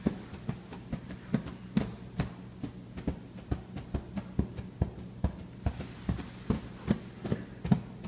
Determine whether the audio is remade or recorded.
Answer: recorded